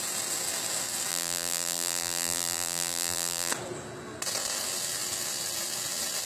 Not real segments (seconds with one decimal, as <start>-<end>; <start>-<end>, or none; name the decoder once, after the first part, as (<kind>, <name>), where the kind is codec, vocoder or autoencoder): 1.1-3.5 (vocoder, BigVGAN v2)